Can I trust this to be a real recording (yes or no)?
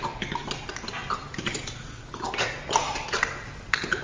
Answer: yes